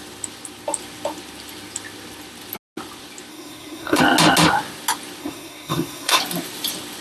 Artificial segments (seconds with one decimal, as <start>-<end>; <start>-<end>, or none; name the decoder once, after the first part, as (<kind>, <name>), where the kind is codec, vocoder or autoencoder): 3.3-4.0 (codec, SNAC); 5.2-6.2